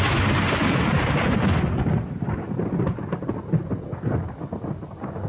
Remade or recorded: recorded